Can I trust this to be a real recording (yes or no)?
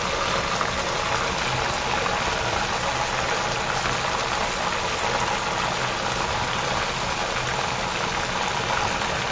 yes